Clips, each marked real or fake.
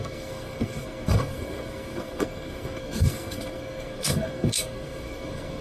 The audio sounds fake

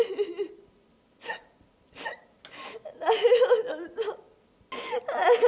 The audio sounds real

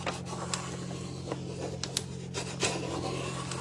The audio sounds real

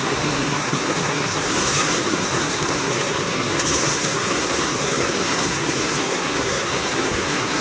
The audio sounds fake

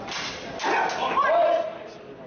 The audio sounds real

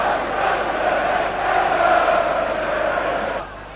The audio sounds real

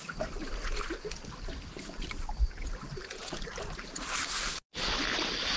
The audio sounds real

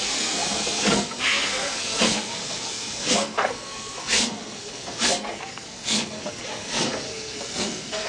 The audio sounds fake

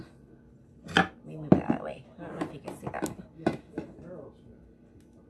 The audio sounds real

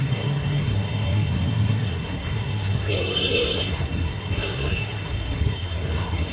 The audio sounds fake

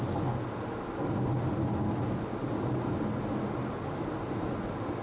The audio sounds real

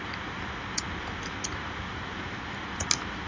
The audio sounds real